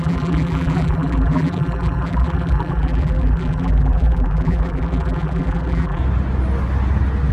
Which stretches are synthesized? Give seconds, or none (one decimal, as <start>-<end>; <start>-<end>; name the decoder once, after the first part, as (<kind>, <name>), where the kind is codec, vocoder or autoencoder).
0.0-6.0 (vocoder, BigVGAN v2)